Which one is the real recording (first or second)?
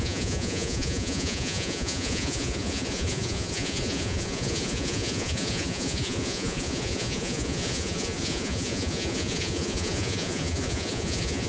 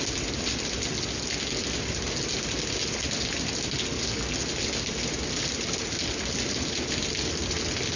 second